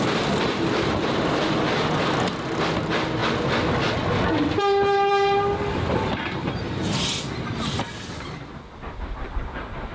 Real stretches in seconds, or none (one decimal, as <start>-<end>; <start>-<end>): 0.0-9.9